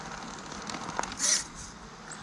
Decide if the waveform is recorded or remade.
recorded